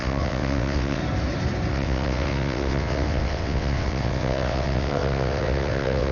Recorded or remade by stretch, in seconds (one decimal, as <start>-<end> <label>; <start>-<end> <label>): 0.0-1.0 remade; 1.0-1.7 recorded; 1.7-6.1 remade